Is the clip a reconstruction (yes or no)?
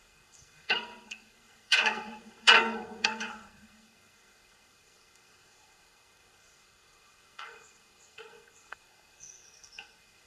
yes